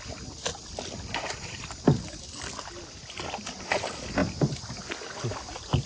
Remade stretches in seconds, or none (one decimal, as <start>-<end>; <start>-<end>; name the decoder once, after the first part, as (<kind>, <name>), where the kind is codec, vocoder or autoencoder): none